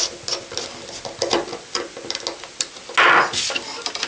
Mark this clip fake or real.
real